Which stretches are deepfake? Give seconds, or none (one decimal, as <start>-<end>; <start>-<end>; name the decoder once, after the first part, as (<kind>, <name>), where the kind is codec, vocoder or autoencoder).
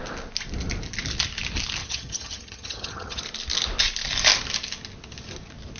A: 1.8-3.2 (vocoder, HiFi-GAN)